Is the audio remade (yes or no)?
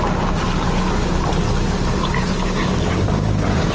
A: no